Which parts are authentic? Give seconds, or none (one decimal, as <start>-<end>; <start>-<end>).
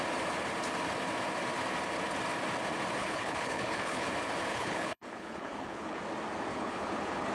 0.0-3.0; 4.1-4.5; 6.0-6.5